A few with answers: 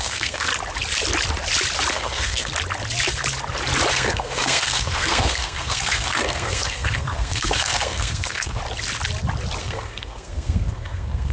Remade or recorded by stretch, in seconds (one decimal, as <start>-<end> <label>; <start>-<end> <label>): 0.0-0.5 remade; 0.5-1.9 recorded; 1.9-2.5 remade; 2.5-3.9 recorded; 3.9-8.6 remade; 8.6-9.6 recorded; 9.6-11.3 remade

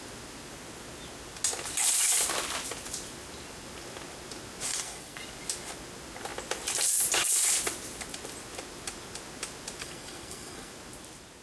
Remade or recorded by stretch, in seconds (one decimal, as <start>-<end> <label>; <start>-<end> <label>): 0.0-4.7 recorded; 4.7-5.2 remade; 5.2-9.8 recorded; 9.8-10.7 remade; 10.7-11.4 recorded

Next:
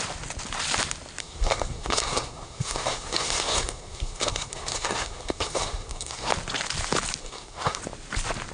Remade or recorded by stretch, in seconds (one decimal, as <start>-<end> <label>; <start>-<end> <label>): 0.0-1.2 recorded; 1.2-6.3 remade; 6.3-7.2 recorded; 7.2-7.8 remade; 7.8-8.5 recorded

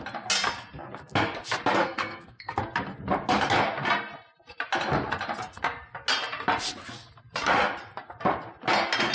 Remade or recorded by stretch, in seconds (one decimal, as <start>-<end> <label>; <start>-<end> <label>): 0.0-1.8 recorded; 1.8-2.6 remade; 2.6-9.1 recorded

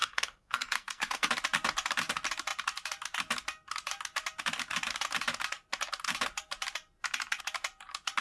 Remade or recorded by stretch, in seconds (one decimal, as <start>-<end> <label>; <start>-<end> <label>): 0.0-1.3 remade; 1.3-8.2 recorded

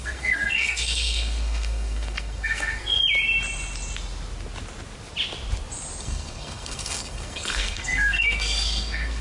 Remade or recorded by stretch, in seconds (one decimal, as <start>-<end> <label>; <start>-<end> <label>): 0.0-3.0 remade; 3.0-6.0 recorded; 6.0-9.2 remade

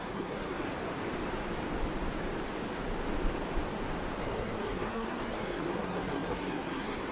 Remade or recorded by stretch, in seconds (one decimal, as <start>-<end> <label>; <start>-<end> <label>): 0.0-0.7 remade; 0.7-4.2 recorded; 4.2-7.1 remade

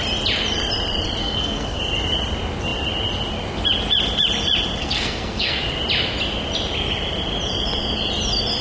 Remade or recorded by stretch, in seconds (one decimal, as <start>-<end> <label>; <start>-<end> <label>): 0.0-1.2 recorded; 1.2-1.8 remade; 1.8-4.8 recorded; 4.8-5.6 remade; 5.6-8.6 recorded